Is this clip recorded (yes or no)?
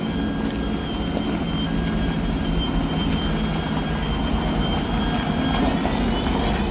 yes